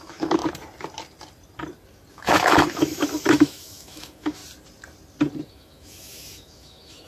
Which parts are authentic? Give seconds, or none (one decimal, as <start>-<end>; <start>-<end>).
0.4-2.1; 4.4-5.5